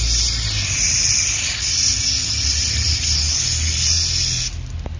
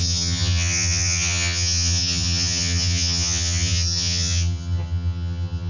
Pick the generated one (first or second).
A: second